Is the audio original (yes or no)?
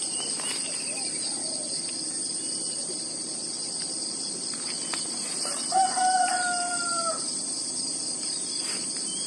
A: no